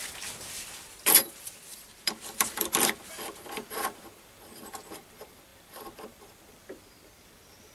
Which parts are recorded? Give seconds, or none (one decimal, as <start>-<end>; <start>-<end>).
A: none